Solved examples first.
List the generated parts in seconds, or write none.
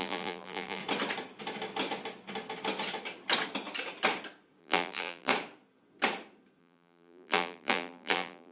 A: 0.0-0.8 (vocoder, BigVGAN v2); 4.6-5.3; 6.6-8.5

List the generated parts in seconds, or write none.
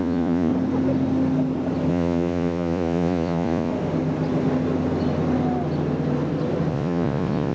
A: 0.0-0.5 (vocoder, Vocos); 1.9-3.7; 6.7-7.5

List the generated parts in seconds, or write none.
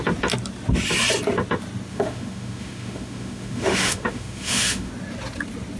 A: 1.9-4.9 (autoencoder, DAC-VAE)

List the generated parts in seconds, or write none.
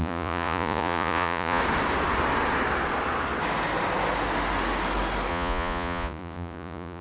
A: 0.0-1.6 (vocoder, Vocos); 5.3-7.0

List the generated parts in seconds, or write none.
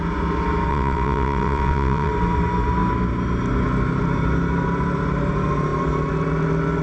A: 0.7-2.1 (vocoder, WaveNeXt)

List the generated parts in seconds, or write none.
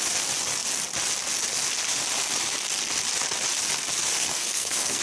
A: 4.0-5.0 (codec, SNAC)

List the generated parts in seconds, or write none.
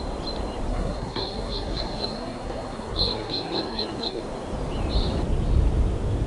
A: 0.7-4.2 (codec, SNAC)